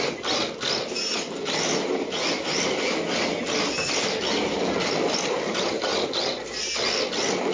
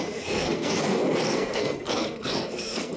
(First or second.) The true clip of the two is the first